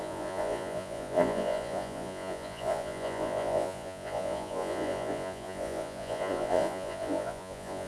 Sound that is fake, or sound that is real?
fake